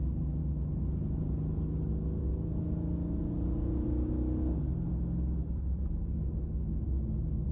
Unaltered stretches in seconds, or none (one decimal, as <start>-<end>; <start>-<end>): 0.0-5.4; 6.0-7.5